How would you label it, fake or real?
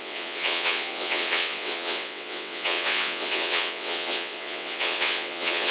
fake